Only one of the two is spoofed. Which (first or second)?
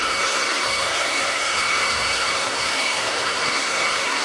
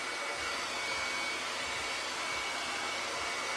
first